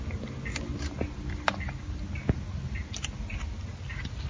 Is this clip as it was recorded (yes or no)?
yes